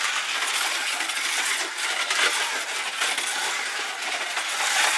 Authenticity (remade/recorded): recorded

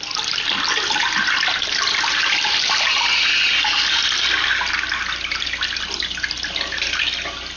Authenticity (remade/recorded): recorded